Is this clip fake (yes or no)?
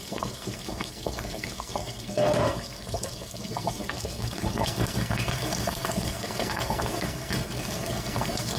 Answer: yes